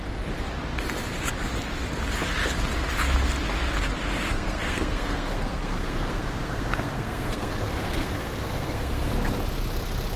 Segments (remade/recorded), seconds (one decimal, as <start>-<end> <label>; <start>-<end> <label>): 0.0-4.3 recorded; 4.3-9.1 remade; 9.1-10.2 recorded